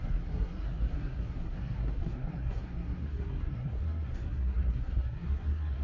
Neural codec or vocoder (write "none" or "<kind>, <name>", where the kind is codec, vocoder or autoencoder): codec, SNAC